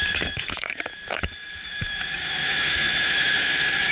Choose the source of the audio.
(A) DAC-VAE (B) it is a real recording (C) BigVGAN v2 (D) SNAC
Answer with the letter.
A